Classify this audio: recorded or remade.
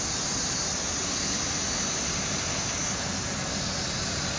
recorded